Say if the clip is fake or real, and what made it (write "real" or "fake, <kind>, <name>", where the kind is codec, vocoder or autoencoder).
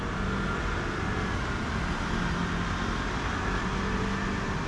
real